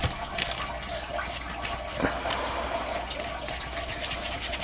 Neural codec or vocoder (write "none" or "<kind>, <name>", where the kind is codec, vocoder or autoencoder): none